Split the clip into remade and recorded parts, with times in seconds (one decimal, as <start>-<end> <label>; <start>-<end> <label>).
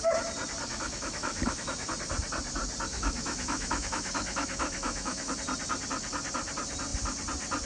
0.0-0.7 recorded; 0.7-1.9 remade; 1.9-2.9 recorded; 2.9-5.3 remade; 5.3-7.7 recorded